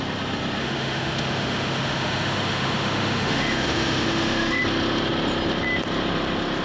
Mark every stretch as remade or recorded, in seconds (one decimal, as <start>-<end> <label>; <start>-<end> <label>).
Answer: 0.0-0.6 recorded; 0.6-4.6 remade; 4.6-6.6 recorded